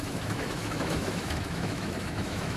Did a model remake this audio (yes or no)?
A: yes